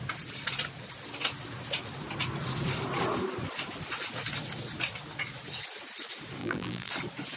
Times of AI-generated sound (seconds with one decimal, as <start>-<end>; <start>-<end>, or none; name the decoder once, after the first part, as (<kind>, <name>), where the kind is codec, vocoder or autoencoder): 6.4-6.9 (vocoder, BigVGAN v2)